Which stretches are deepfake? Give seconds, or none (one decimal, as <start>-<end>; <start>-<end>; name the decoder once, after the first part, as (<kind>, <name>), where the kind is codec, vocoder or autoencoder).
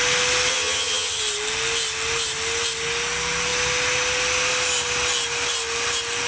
0.5-1.2 (vocoder, HiFi-GAN)